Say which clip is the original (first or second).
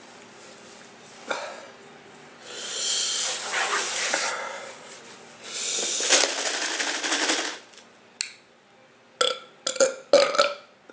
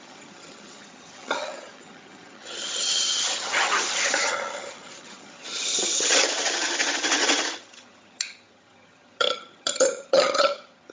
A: first